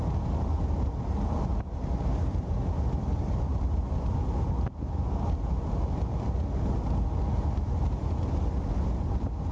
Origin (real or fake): real